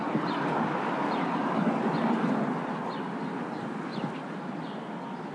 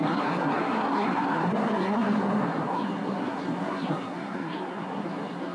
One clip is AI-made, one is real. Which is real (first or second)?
first